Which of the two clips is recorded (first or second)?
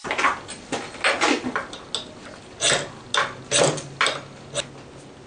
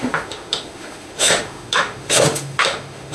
first